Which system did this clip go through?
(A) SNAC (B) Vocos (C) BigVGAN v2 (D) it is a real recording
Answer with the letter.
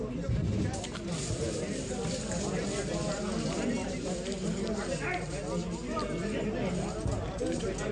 D